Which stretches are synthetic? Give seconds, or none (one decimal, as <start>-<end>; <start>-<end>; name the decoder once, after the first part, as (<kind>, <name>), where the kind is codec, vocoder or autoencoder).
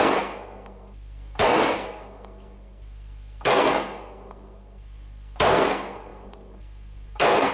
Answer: 0.0-7.5 (codec, SNAC)